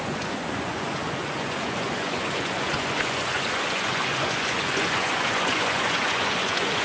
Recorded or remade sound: remade